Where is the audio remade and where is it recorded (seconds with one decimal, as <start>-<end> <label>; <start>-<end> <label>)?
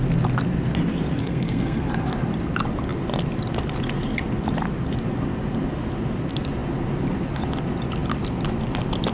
0.0-1.2 recorded; 1.2-1.9 remade; 1.9-9.1 recorded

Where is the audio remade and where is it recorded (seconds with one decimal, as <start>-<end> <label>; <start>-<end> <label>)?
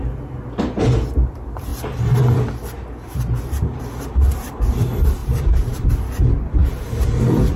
0.0-5.2 recorded; 5.2-5.9 remade; 5.9-7.6 recorded